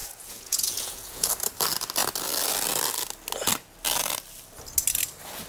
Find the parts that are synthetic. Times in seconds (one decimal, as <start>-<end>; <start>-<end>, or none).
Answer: 0.0-1.3